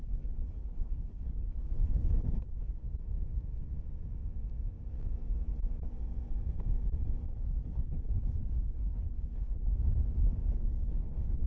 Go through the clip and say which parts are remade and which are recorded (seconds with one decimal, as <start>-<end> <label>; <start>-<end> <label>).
0.0-2.8 remade; 2.8-7.3 recorded; 7.3-9.7 remade; 9.7-10.5 recorded; 10.5-11.5 remade